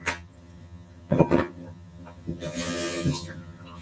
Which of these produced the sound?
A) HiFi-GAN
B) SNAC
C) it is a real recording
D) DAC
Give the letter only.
A